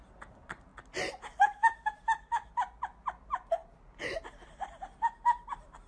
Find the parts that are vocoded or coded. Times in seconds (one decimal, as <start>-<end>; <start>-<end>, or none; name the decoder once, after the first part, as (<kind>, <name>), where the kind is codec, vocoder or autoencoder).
none